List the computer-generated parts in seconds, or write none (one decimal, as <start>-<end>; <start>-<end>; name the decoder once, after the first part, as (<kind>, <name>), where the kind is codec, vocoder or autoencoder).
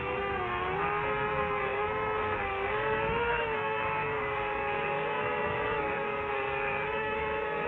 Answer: 0.0-7.7 (codec, SNAC)